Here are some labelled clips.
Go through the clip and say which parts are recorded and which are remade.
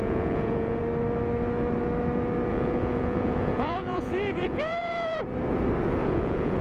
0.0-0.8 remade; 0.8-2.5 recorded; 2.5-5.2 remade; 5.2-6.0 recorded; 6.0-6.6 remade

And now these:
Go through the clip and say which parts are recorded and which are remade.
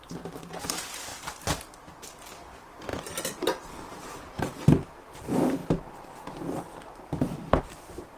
0.0-1.1 remade; 1.1-2.5 recorded; 2.5-2.9 remade; 2.9-3.9 recorded; 3.9-8.2 remade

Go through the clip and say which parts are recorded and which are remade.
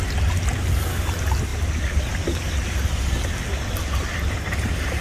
0.0-5.0 recorded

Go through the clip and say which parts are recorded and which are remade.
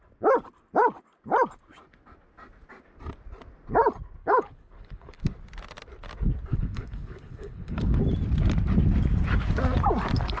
0.0-4.2 recorded; 4.2-5.2 remade; 5.2-6.5 recorded; 6.5-8.0 remade; 8.0-10.4 recorded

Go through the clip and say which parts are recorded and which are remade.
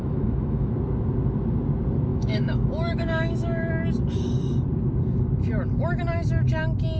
0.0-0.7 remade; 0.7-2.1 recorded; 2.1-3.7 remade; 3.7-7.0 recorded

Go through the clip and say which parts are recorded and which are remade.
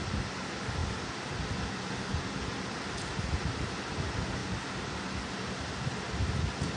0.0-6.8 recorded